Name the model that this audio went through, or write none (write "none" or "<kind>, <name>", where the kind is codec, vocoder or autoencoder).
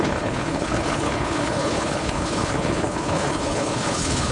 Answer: codec, HILCodec